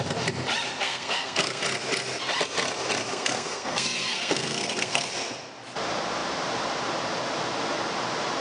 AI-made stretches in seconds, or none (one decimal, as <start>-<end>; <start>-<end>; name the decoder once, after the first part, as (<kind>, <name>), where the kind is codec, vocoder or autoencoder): 0.8-1.6 (codec, SNAC); 3.1-5.1